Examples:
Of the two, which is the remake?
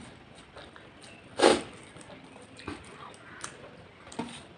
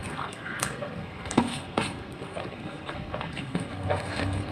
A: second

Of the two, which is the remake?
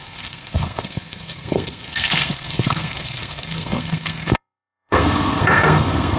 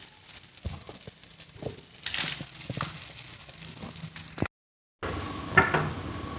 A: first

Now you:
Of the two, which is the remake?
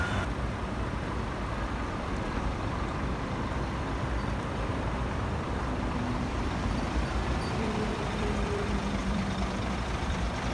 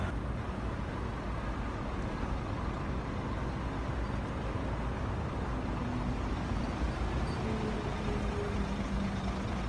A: first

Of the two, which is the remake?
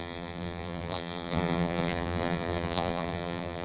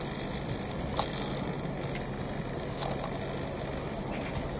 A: first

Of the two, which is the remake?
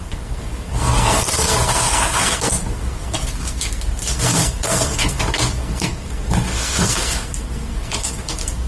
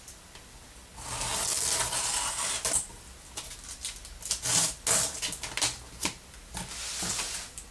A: first